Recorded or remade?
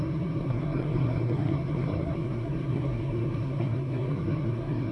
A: remade